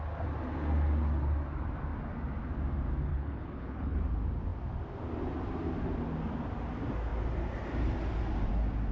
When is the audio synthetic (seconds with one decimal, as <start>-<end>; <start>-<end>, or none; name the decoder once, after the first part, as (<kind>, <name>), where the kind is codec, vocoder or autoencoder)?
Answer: 3.1-4.0 (codec, HILCodec)